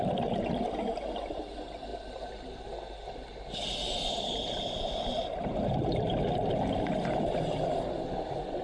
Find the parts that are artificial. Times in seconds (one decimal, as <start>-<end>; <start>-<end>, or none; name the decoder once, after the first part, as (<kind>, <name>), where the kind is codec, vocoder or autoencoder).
none